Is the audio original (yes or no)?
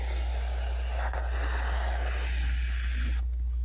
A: yes